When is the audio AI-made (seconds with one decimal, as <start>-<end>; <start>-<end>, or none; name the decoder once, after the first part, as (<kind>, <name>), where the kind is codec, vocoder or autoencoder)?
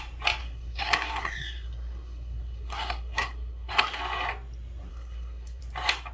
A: 0.4-4.0 (codec, SNAC); 4.9-5.6